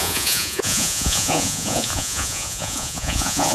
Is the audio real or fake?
fake